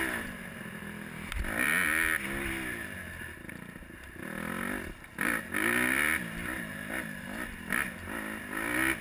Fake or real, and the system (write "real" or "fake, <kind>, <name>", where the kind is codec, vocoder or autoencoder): real